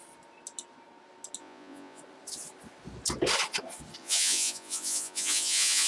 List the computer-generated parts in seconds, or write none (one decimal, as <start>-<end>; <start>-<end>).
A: 1.4-2.0; 4.0-5.9